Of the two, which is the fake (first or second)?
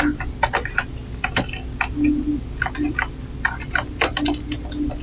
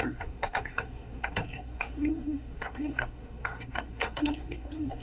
second